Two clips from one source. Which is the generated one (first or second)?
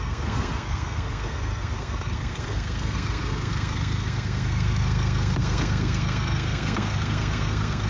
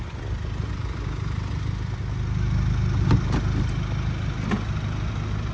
first